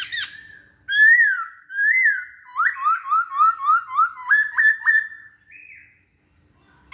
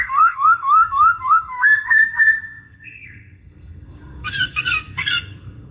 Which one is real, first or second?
first